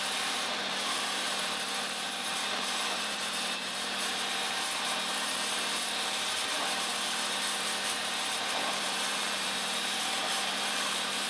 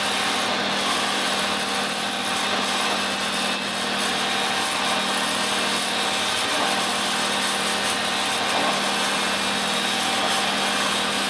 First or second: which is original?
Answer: second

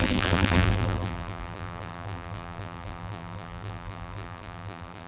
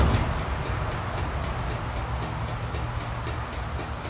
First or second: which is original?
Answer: second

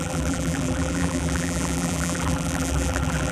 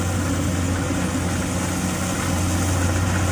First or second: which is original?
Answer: second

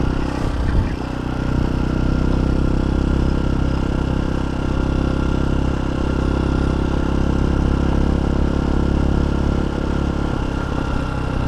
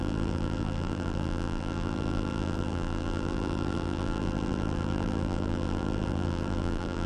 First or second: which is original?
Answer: first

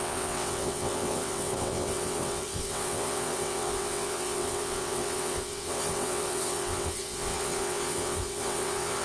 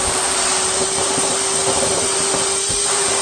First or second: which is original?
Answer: second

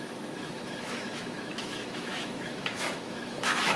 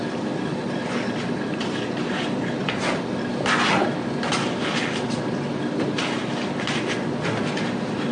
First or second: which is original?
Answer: second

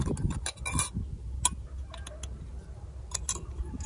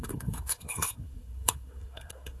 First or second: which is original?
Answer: first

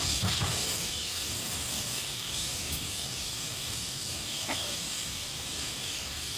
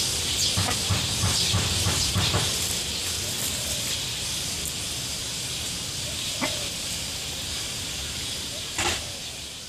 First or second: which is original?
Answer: second